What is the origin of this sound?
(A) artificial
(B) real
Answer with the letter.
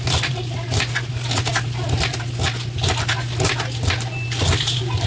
B